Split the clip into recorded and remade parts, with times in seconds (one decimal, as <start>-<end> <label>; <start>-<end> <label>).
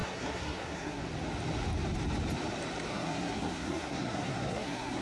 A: 0.0-1.0 remade; 1.0-2.9 recorded; 2.9-5.0 remade